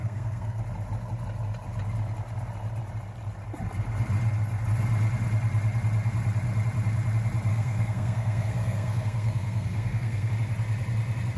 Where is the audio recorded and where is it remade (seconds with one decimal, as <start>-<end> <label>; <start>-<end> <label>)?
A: 0.0-0.6 remade; 0.6-7.5 recorded; 7.5-10.3 remade; 10.3-11.4 recorded